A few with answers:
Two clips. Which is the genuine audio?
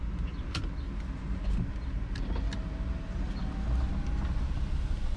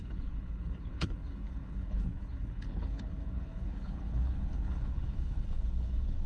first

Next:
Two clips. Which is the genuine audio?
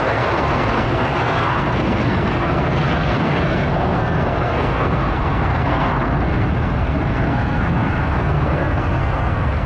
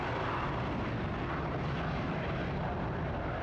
second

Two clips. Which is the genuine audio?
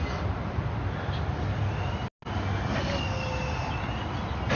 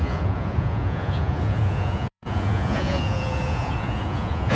first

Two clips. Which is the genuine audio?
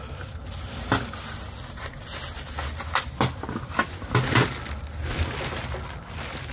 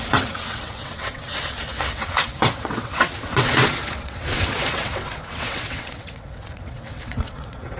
first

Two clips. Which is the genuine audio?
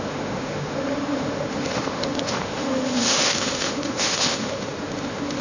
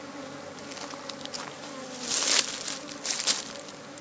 second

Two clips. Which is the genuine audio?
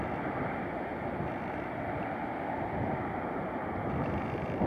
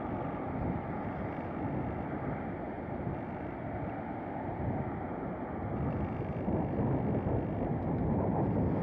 second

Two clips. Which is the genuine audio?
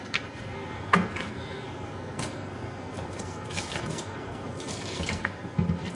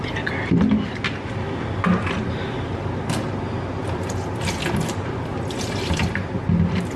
second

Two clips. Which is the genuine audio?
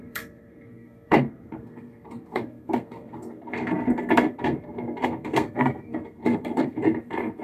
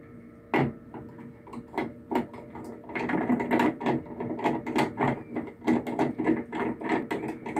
second